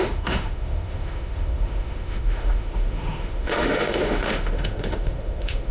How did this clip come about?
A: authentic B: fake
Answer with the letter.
B